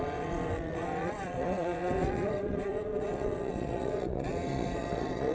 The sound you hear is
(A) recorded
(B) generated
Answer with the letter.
B